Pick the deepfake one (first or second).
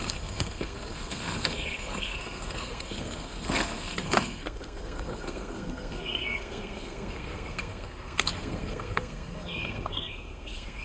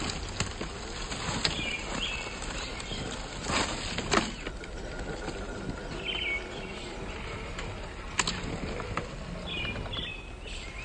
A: first